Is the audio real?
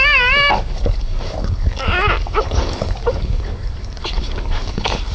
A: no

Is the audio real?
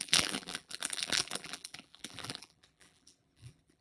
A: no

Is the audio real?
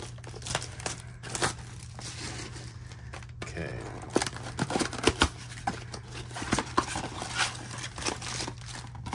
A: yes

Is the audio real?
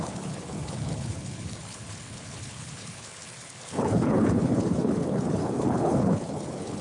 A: no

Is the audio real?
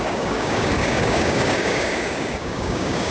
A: no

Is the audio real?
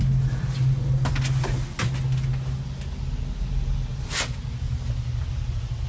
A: yes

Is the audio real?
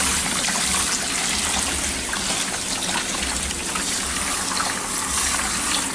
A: yes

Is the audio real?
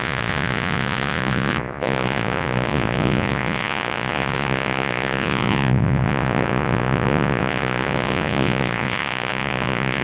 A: no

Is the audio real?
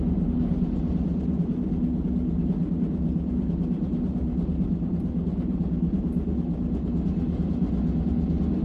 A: yes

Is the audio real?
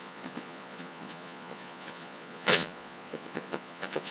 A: no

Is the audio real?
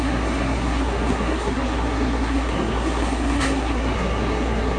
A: no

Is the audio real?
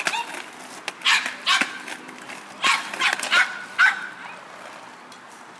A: yes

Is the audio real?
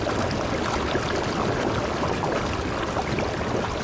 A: yes